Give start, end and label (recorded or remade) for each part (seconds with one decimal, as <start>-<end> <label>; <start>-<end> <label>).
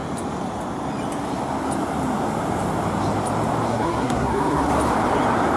0.0-3.7 recorded; 3.7-4.7 remade; 4.7-5.6 recorded